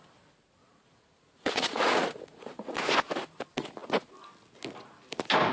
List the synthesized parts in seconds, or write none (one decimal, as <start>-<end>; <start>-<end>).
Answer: 0.6-2.8